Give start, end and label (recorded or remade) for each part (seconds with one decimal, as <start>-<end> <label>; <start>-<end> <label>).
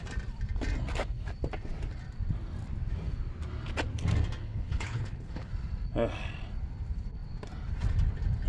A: 0.0-4.4 recorded; 4.4-5.5 remade; 5.5-8.5 recorded